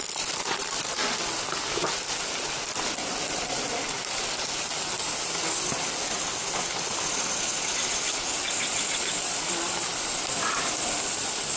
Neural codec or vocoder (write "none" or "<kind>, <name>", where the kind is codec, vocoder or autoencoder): none